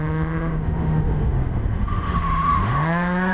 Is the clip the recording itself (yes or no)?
no